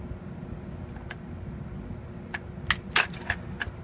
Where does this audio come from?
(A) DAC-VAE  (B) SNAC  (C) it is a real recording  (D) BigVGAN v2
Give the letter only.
C